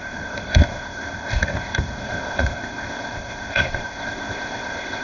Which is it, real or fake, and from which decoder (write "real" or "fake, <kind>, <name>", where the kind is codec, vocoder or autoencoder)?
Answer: fake, codec, ZipCodec